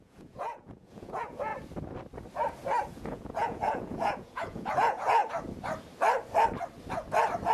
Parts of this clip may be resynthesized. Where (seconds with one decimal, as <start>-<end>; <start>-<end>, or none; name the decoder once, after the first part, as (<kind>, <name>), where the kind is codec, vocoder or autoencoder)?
0.0-1.5 (vocoder, Vocos); 3.0-5.2